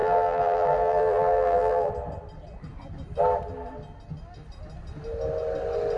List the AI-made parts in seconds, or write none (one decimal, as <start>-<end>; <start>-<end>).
0.0-1.9